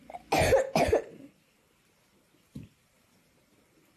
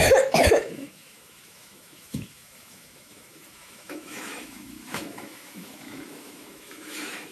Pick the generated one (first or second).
second